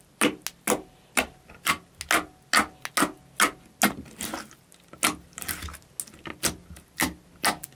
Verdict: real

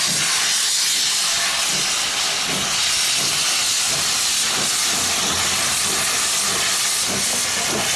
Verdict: real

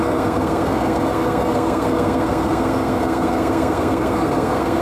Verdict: fake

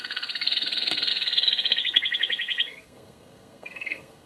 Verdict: fake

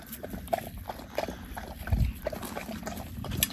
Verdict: real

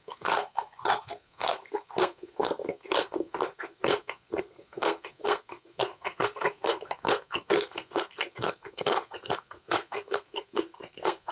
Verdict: fake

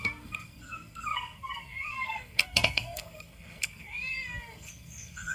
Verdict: fake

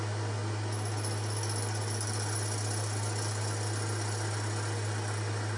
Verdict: real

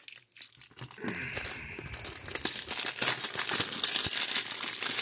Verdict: real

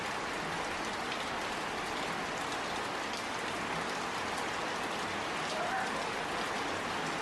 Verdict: real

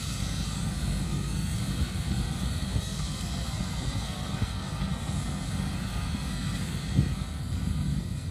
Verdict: fake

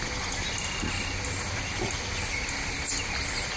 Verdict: real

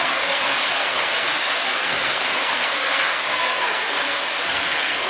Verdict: fake